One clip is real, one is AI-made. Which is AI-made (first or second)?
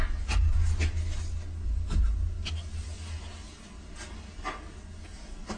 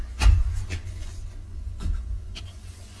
second